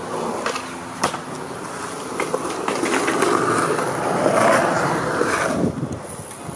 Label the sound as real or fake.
real